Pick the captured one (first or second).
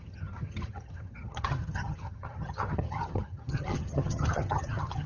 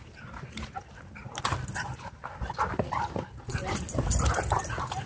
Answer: second